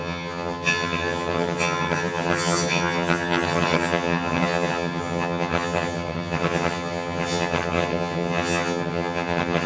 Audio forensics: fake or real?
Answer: fake